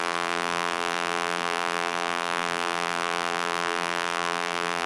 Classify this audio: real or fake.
fake